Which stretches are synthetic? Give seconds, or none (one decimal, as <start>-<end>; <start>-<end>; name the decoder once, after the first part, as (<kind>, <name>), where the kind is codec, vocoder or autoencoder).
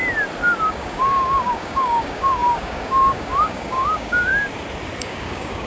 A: 0.7-4.3 (codec, DAC); 5.0-5.7